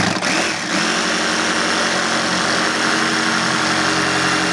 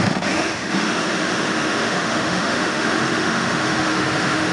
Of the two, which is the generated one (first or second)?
second